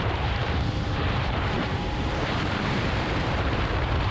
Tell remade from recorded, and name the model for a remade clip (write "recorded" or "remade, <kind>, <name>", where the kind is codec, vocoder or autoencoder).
remade, vocoder, BigVGAN v2